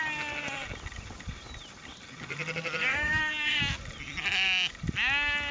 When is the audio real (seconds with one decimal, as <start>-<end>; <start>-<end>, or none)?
0.0-2.9; 3.6-5.5